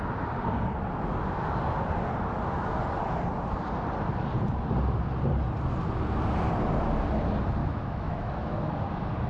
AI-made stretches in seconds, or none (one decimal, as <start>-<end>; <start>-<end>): 7.6-8.6